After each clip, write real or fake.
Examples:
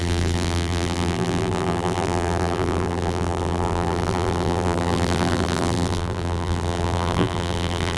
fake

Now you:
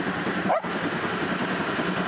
real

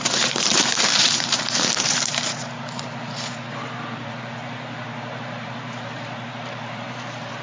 fake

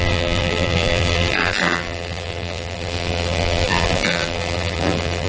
fake